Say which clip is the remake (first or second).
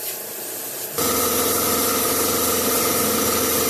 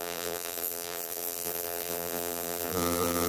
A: second